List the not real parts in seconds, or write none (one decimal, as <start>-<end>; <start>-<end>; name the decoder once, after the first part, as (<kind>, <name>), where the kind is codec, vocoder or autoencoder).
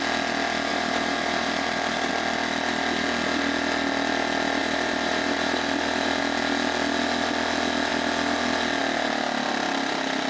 0.7-2.1 (vocoder, BigVGAN v2); 4.6-6.2